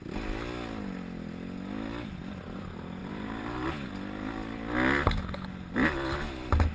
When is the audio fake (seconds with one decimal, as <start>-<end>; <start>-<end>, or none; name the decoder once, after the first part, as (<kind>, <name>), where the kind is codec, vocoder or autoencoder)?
3.0-3.7 (vocoder, BigVGAN v2)